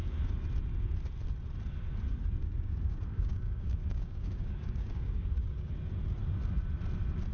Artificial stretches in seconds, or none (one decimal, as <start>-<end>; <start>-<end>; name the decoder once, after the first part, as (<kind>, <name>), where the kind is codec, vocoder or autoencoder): 2.4-5.7 (codec, DAC)